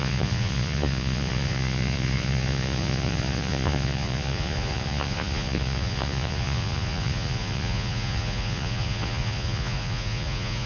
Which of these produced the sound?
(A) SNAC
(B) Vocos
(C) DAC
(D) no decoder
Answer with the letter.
B